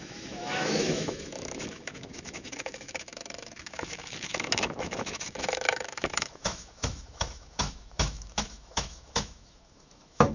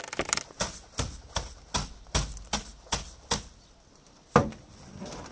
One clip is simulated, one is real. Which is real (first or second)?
second